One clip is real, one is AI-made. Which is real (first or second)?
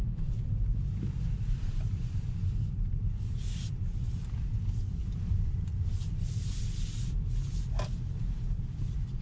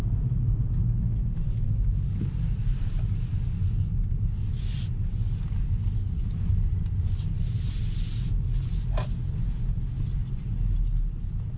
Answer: second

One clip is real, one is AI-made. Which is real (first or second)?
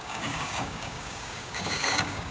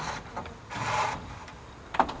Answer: second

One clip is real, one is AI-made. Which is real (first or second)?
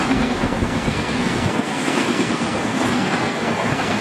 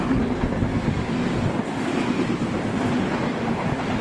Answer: second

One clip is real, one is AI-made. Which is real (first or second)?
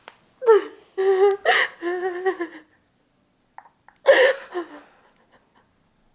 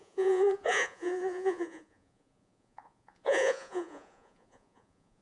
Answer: first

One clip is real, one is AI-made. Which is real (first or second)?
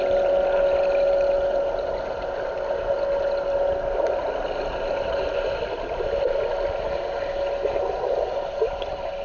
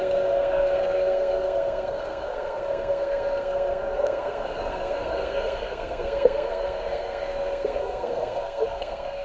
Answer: first